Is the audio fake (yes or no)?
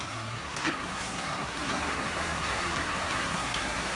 yes